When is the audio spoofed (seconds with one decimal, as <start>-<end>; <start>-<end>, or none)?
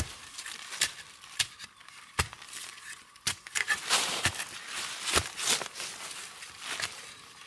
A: 2.7-3.8